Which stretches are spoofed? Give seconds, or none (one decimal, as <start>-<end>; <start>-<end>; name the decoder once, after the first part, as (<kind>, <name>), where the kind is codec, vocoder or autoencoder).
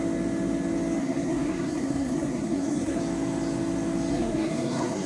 1.0-3.0 (codec, SNAC); 4.1-5.1